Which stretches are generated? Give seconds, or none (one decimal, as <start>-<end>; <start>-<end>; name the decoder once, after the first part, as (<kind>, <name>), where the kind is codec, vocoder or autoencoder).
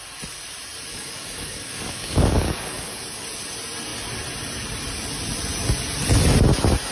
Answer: 0.9-3.0 (codec, DAC)